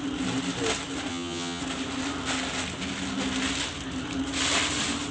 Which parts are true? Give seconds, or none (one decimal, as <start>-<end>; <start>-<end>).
0.0-1.1; 1.6-5.1